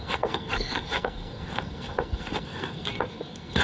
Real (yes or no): no